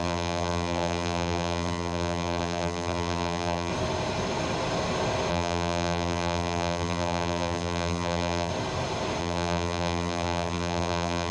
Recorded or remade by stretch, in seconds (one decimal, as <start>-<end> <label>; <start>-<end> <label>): 0.0-3.7 remade; 3.7-5.3 recorded; 5.3-8.5 remade; 8.5-9.2 recorded; 9.2-11.3 remade